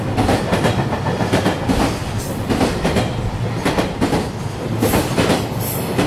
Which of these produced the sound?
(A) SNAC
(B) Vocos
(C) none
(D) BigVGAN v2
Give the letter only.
C